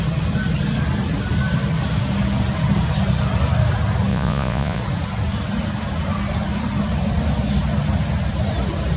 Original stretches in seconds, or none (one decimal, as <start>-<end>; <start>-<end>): 0.0-4.1; 4.8-9.0